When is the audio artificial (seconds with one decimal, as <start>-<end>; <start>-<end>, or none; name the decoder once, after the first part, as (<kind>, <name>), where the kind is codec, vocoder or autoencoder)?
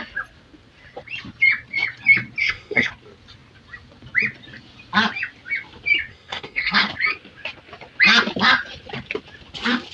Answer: 2.4-2.9 (codec, SNAC); 6.1-6.9